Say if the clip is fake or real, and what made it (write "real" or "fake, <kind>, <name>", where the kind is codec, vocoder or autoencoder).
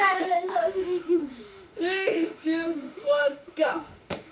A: fake, autoencoder, DAC-VAE